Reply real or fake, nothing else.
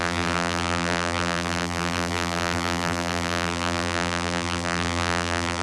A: fake